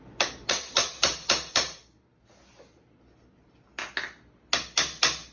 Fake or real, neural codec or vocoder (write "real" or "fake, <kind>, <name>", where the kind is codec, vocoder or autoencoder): real